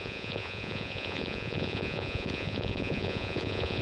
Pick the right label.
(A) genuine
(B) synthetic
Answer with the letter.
B